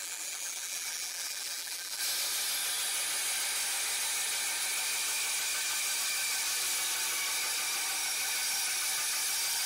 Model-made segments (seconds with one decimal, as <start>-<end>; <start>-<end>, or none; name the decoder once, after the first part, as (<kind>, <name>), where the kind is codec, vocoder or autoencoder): 0.0-2.0 (vocoder, BigVGAN v2)

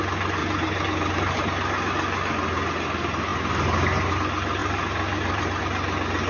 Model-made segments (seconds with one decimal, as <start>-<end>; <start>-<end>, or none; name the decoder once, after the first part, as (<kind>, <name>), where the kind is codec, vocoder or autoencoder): 0.4-1.4 (vocoder, BigVGAN v2); 4.6-5.6

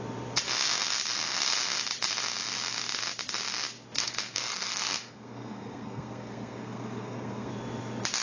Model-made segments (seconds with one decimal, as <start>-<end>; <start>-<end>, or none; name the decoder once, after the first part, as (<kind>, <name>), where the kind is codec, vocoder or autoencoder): 4.0-7.5 (codec, SNAC)

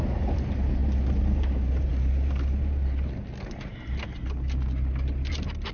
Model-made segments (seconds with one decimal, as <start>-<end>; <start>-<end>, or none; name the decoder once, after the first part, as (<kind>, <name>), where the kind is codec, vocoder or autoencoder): none

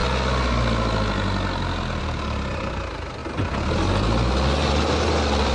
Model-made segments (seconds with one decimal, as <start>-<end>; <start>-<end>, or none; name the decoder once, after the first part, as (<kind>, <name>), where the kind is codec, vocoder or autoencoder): 2.0-3.2 (vocoder, BigVGAN v2); 4.7-5.5